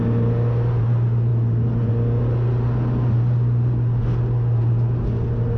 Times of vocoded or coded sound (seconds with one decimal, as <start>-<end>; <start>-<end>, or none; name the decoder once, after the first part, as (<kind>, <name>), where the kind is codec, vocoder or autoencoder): none